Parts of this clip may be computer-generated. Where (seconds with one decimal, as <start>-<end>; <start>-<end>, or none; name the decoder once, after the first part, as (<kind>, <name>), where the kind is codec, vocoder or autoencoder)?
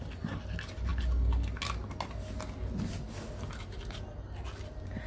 none